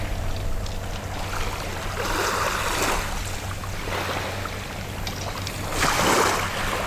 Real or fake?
real